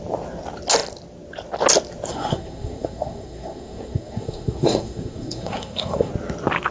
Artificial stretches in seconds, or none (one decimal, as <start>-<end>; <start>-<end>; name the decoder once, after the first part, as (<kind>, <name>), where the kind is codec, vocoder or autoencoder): 2.1-6.1 (codec, SNAC)